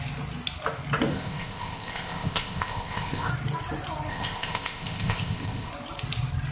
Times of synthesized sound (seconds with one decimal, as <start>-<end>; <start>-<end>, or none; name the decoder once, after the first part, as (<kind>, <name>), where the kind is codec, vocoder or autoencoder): 1.1-3.3 (codec, ZipCodec); 4.1-5.7